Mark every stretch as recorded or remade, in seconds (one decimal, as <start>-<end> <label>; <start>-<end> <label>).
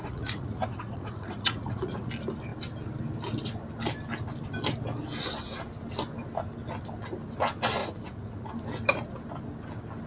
0.0-2.1 remade; 2.1-7.8 recorded; 7.8-8.5 remade; 8.5-10.1 recorded